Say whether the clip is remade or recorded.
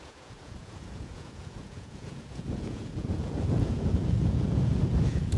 remade